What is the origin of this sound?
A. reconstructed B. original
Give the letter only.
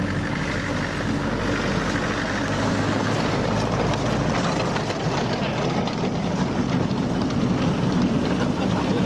B